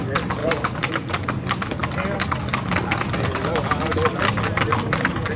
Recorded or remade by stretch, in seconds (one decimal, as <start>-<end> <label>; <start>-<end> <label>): 0.0-0.4 recorded; 0.4-0.9 remade; 0.9-5.4 recorded